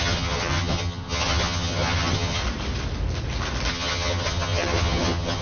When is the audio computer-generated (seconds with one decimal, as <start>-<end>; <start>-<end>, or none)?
0.0-2.4; 3.7-5.4

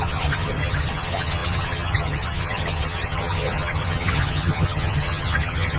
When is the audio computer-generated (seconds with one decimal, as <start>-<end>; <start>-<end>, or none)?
0.0-5.8